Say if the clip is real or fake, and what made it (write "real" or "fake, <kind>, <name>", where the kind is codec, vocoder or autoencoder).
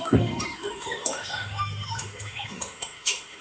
fake, autoencoder, DAC-VAE